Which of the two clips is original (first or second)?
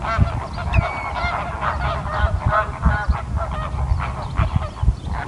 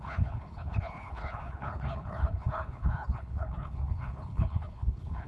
first